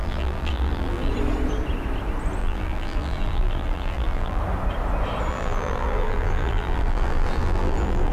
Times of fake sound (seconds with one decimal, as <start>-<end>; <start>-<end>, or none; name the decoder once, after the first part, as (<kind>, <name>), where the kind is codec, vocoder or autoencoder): 0.0-1.1 (vocoder, BigVGAN v2); 2.4-4.4; 5.3-8.1